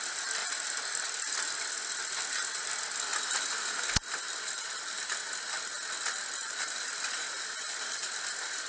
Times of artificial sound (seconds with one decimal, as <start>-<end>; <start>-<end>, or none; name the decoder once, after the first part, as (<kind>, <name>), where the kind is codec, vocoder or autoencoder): 7.2-8.7 (vocoder, BigVGAN v2)